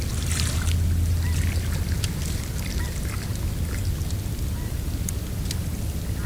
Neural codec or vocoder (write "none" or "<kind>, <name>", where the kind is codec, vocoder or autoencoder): none